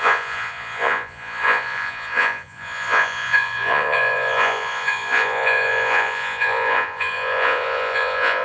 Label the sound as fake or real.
fake